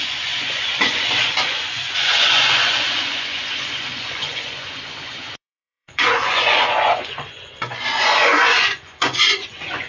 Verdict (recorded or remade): remade